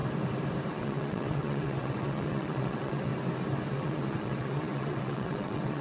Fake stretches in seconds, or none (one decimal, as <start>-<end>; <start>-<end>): 0.7-3.1; 3.7-5.8